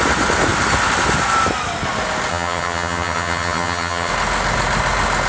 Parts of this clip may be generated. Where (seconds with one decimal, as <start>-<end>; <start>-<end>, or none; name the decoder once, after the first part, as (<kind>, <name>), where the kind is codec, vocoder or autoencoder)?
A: 2.3-4.1 (vocoder, HiFi-GAN)